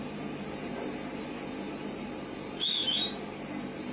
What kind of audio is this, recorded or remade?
remade